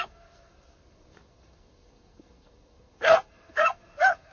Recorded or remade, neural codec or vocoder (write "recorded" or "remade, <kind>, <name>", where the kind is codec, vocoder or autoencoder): remade, codec, SNAC